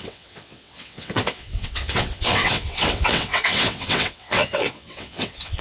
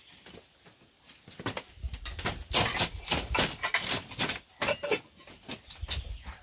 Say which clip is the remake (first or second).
first